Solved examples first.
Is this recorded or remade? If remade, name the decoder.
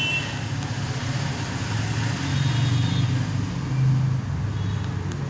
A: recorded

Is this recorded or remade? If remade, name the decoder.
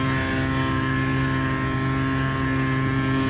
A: recorded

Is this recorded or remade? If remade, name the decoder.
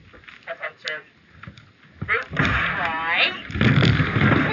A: recorded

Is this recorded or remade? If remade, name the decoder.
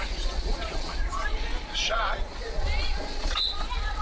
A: remade, vocoder, Vocos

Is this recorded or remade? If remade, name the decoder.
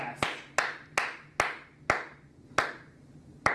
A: recorded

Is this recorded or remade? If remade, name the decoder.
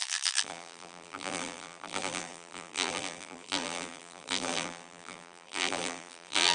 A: remade, vocoder, BigVGAN v2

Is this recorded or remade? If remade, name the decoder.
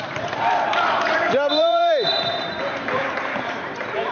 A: remade, vocoder, BigVGAN v2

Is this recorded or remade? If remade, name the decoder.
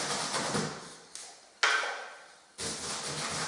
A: recorded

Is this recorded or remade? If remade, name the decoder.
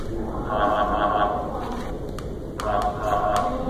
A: recorded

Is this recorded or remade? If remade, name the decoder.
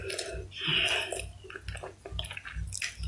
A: recorded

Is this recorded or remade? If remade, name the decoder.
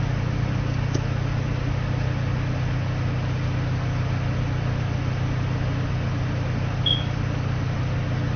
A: recorded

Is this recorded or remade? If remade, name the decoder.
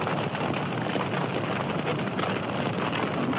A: recorded